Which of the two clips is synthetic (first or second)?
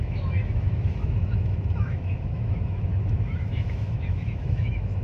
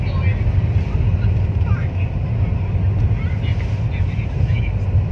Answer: first